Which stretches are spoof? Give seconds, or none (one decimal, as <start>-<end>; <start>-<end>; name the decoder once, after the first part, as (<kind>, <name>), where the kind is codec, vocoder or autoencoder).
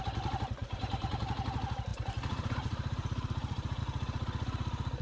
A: 0.6-1.2 (vocoder, BigVGAN v2); 1.9-3.8